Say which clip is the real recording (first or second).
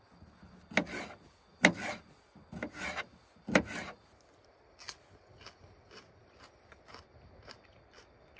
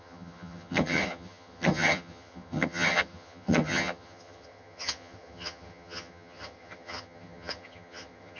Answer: first